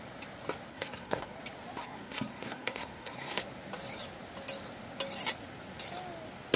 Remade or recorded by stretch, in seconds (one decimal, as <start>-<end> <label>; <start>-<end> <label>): 0.0-0.7 recorded; 0.7-1.4 remade; 1.4-1.8 recorded; 1.8-3.4 remade; 3.4-6.6 recorded